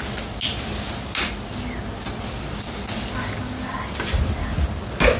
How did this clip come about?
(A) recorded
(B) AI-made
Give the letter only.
A